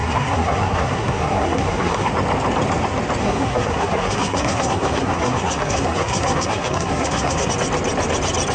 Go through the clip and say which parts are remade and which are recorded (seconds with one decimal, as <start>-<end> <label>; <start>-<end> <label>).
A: 0.0-2.1 remade; 2.1-3.2 recorded; 3.2-7.5 remade; 7.5-8.5 recorded